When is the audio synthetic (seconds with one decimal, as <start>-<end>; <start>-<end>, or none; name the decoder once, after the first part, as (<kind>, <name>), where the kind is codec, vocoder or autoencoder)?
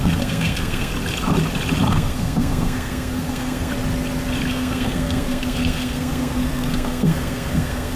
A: 0.0-0.9 (codec, SNAC); 1.9-3.7; 4.5-8.0